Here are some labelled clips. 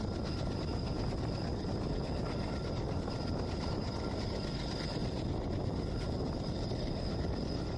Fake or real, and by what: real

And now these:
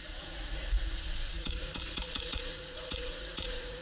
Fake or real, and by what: fake, vocoder, Vocos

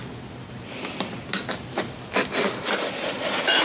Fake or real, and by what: real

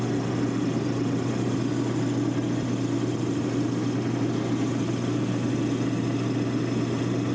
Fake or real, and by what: real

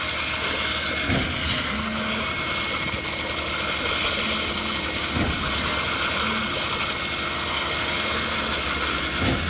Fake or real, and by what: real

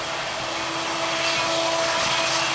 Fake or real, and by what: real